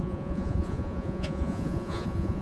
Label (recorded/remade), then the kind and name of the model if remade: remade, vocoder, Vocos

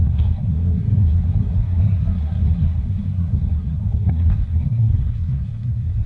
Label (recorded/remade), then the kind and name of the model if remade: remade, codec, SNAC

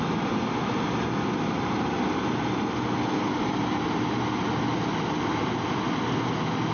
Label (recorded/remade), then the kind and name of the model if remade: recorded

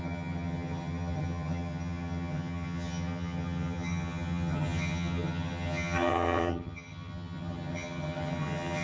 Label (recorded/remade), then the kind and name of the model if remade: remade, vocoder, HiFi-GAN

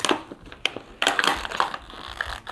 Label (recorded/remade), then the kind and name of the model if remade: recorded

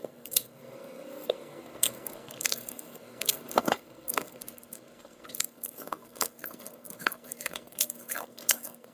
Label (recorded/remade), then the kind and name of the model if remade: remade, codec, SNAC